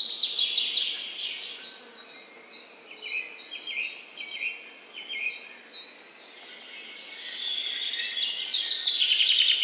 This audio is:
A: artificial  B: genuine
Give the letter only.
B